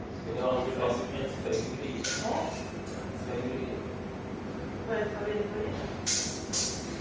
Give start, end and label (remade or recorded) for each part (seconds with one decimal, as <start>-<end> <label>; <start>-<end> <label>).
0.0-7.0 recorded